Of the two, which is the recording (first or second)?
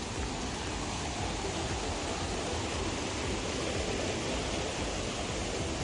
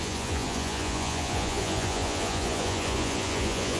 first